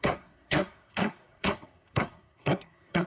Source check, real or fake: fake